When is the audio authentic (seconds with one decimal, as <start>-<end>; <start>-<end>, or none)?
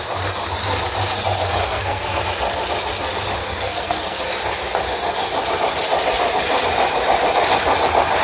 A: 0.0-1.6; 2.2-3.4; 4.2-8.2